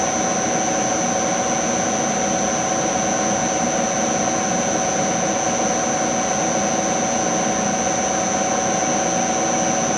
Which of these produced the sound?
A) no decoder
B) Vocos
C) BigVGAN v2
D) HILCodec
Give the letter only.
A